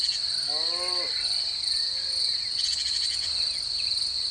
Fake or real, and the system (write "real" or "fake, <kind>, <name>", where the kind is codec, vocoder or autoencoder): real